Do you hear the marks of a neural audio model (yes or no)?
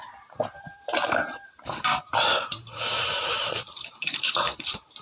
yes